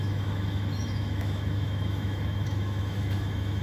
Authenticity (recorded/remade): remade